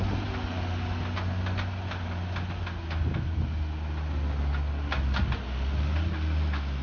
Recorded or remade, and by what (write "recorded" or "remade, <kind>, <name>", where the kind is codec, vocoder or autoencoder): recorded